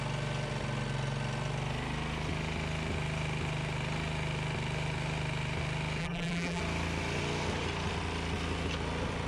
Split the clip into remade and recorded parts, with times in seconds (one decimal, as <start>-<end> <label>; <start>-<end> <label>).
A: 0.0-6.0 recorded; 6.0-6.6 remade; 6.6-9.3 recorded